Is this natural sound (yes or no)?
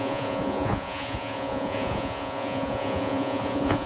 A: no